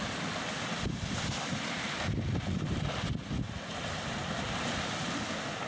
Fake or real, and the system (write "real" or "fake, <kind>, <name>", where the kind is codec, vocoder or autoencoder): real